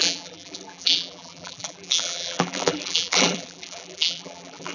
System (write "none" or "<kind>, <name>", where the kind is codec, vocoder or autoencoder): vocoder, BigVGAN v2